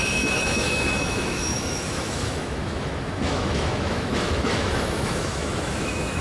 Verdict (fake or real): fake